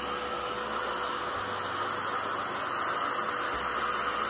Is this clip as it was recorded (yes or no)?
yes